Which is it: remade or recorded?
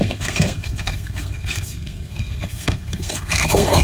remade